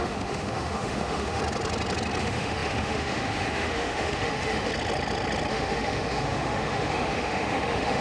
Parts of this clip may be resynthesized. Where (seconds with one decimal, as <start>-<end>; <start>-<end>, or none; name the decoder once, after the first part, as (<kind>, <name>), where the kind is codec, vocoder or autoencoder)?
0.0-1.4 (autoencoder, DAC-VAE); 2.2-4.7; 5.5-8.0

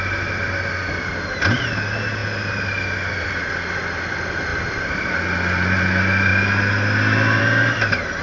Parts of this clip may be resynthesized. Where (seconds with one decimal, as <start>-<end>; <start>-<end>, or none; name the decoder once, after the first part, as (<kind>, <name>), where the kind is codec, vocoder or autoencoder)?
4.5-5.1 (vocoder, BigVGAN v2)

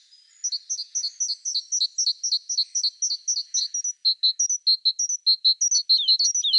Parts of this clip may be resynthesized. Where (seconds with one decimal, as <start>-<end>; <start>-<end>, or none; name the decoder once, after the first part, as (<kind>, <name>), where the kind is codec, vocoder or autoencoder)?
none

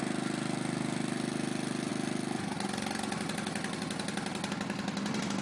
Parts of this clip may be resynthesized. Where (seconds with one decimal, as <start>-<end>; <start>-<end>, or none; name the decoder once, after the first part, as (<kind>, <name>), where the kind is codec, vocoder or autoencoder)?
none

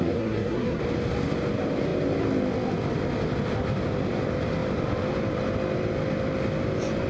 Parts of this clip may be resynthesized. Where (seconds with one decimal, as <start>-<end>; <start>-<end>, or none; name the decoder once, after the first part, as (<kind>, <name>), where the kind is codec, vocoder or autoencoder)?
0.0-0.8 (codec, SNAC)

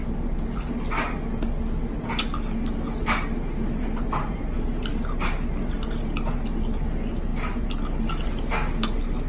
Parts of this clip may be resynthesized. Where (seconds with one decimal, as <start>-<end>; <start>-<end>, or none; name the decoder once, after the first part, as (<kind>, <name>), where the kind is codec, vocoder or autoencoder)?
none